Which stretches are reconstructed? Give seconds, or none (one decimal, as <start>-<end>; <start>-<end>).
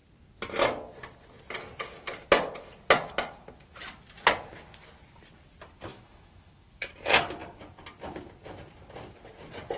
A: 5.9-6.9